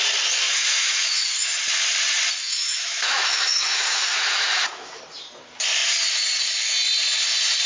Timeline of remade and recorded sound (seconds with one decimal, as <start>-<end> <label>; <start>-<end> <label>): 0.0-0.5 recorded; 0.5-1.5 remade; 1.5-2.4 recorded; 2.4-5.0 remade; 5.0-7.7 recorded